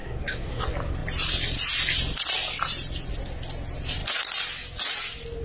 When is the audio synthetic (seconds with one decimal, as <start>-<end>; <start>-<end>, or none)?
0.0-0.6

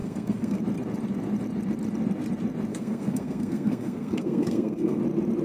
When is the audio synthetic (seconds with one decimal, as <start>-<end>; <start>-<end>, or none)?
0.0-0.6; 2.7-5.0

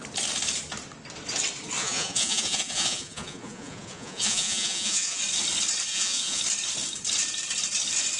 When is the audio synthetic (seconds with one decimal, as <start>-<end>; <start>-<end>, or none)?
1.8-5.2; 5.9-6.4

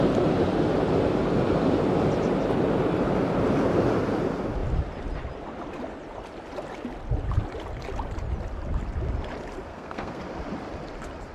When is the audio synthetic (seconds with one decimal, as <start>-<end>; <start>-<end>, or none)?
9.7-10.2

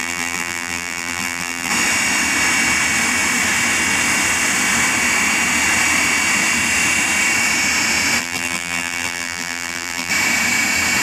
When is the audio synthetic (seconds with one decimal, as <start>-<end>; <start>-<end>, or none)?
0.0-1.7; 8.2-10.1

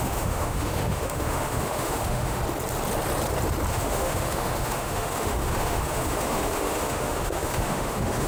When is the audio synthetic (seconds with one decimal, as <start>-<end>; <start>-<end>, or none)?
0.0-2.4; 3.7-8.3

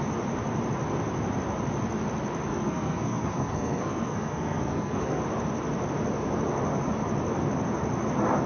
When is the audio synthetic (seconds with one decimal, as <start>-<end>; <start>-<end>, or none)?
2.5-5.2